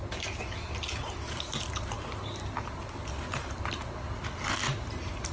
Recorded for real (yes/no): yes